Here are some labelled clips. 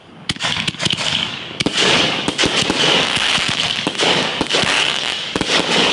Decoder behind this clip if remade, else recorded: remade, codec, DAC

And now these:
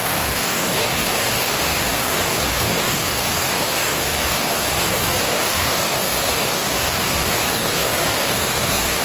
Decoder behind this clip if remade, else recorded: remade, codec, DAC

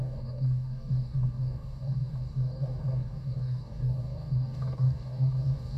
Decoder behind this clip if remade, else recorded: remade, codec, DAC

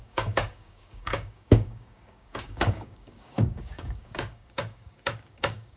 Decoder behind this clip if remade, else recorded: remade, codec, DAC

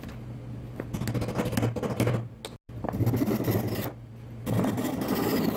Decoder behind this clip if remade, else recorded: recorded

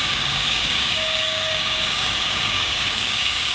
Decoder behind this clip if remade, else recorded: remade, codec, DAC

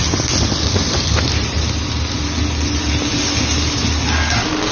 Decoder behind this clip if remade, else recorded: recorded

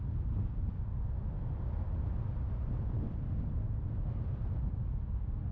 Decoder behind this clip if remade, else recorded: recorded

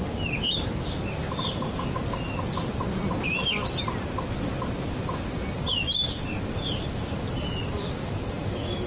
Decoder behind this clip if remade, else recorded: recorded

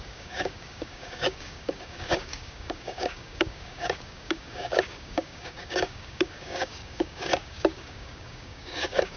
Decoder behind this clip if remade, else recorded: remade, codec, DAC